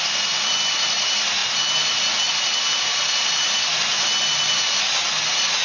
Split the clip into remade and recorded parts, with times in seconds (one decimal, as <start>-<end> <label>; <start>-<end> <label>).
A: 0.0-5.6 recorded